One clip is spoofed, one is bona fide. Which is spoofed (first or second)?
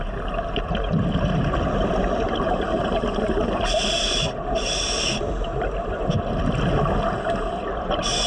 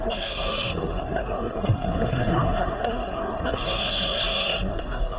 second